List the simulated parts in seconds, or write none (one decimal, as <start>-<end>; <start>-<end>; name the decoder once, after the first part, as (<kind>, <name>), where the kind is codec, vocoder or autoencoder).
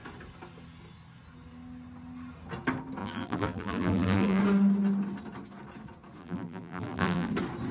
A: 3.0-4.4 (vocoder, BigVGAN v2); 6.2-7.3